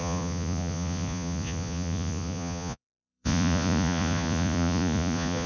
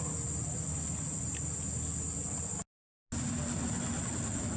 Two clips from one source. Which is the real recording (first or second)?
second